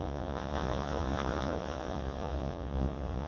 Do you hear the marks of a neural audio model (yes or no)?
yes